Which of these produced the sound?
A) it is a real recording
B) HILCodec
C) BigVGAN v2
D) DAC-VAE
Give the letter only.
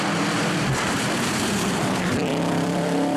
C